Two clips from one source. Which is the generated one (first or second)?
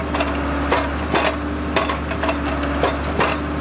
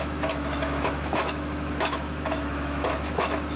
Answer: second